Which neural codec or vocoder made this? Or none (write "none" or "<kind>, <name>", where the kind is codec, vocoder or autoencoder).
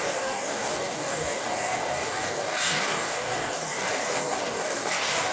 codec, DAC